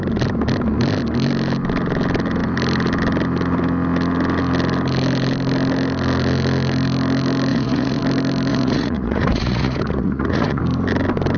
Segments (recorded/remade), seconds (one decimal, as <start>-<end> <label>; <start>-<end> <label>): 0.0-7.5 recorded; 7.5-8.0 remade; 8.0-8.5 recorded; 8.5-10.6 remade; 10.6-11.4 recorded